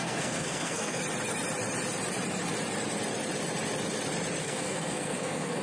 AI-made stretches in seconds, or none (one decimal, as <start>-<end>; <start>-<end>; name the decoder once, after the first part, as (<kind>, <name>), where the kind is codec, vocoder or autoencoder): 0.0-1.0 (codec, SNAC); 4.4-5.6